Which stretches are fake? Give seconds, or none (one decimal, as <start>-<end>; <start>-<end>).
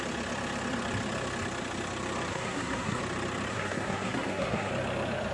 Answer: 2.3-3.0; 3.5-4.7